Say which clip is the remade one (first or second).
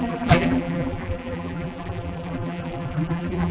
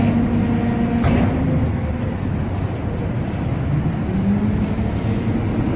first